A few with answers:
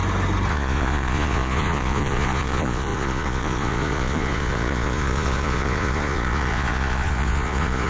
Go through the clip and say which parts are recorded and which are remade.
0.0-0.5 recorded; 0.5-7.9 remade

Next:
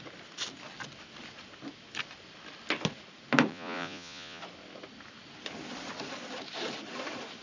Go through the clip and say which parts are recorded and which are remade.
0.0-3.5 recorded; 3.5-4.4 remade; 4.4-7.4 recorded